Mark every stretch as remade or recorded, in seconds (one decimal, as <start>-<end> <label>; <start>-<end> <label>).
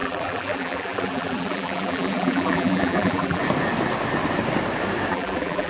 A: 0.0-3.4 remade; 3.4-5.1 recorded; 5.1-5.7 remade